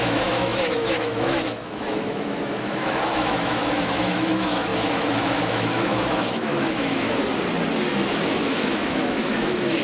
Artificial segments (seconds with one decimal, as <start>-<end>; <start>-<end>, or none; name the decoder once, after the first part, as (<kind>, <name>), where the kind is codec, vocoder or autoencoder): 0.0-7.2 (autoencoder, DAC-VAE); 8.2-9.8